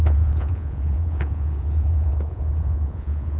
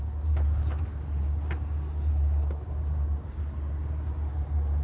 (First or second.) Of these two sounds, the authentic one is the second